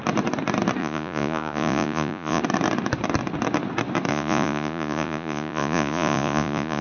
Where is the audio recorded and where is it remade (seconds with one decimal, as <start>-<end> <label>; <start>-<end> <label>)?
0.0-0.8 recorded; 0.8-2.4 remade; 2.4-4.1 recorded; 4.1-6.8 remade